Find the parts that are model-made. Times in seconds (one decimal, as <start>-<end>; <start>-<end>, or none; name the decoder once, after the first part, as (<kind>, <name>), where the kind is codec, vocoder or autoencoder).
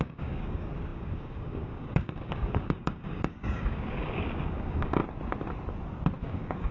0.0-5.0 (codec, DAC); 6.2-6.7